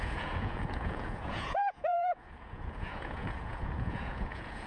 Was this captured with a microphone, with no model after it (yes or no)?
no